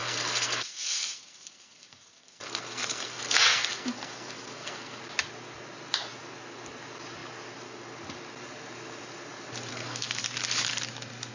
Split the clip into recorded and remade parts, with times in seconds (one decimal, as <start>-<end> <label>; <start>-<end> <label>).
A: 0.0-5.0 remade; 5.0-9.7 recorded; 9.7-10.2 remade; 10.2-11.3 recorded